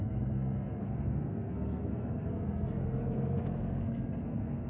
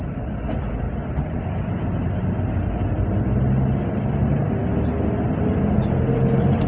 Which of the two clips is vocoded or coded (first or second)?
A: first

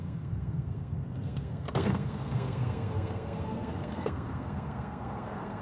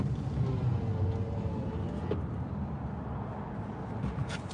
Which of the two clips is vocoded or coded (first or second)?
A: first